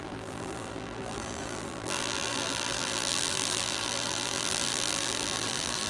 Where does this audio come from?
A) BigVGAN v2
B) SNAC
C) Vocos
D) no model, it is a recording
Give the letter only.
A